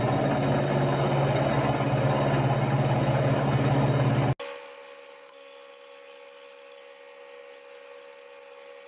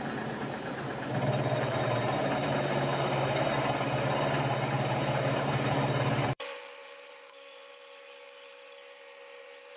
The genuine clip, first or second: first